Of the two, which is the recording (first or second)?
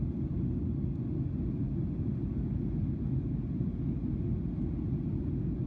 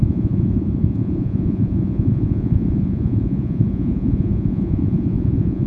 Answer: first